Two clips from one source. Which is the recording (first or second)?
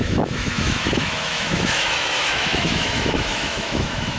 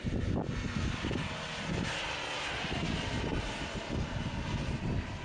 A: second